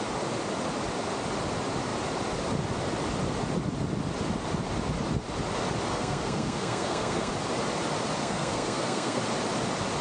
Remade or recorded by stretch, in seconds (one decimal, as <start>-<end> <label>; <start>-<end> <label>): 0.0-5.9 recorded; 5.9-7.3 remade; 7.3-8.2 recorded; 8.2-9.2 remade; 9.2-10.0 recorded